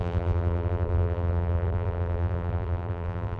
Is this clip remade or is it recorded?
remade